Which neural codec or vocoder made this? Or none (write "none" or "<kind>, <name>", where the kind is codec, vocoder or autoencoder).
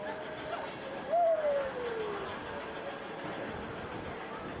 none